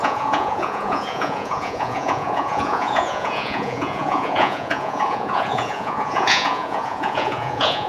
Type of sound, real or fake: fake